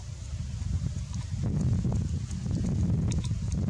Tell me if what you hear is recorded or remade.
recorded